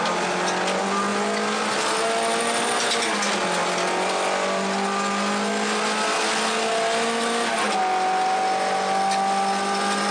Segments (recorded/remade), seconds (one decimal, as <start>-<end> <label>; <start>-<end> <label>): 0.0-10.1 recorded